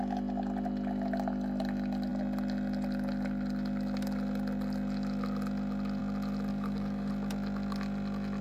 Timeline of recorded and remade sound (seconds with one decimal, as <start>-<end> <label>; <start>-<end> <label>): 0.0-6.5 recorded; 6.5-7.1 remade; 7.1-8.4 recorded